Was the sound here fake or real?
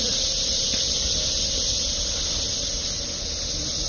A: real